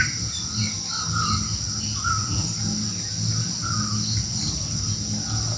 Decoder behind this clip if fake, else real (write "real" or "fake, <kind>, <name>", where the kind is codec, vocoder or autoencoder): real